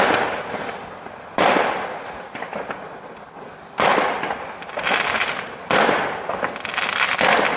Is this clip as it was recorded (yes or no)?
yes